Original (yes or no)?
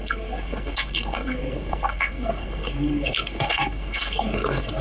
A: no